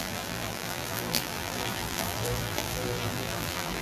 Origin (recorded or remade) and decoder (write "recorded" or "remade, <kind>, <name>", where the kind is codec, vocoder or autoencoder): remade, vocoder, BigVGAN v2